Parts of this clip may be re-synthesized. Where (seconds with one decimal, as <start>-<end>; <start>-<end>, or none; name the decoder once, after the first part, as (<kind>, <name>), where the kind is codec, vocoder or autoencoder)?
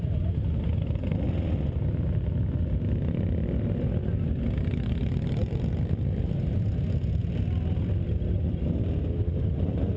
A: none